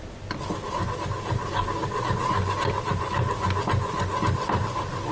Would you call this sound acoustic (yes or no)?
yes